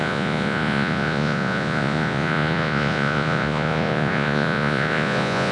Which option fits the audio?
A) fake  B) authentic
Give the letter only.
A